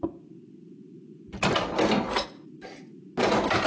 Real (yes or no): yes